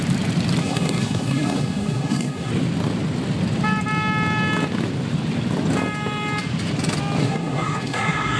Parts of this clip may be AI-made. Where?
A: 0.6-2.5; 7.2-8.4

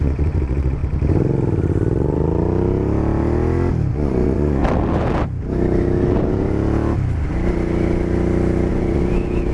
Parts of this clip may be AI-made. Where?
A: 0.0-0.8; 3.9-4.6; 8.7-9.5

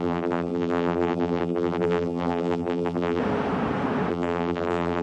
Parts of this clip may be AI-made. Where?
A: 0.0-3.2; 4.1-5.0

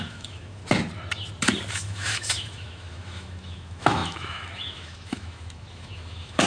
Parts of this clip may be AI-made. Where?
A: 0.0-0.6; 1.7-6.5

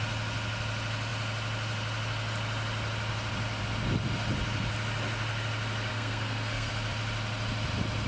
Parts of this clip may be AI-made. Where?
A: 5.9-6.7